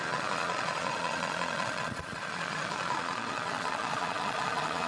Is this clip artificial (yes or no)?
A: yes